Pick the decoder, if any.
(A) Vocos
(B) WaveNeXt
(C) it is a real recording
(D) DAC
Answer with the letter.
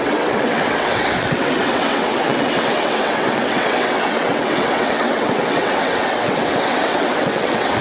B